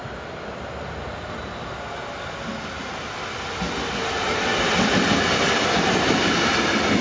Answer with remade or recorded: recorded